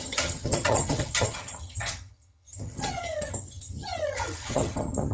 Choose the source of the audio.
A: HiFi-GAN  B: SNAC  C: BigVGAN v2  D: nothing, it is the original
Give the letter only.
A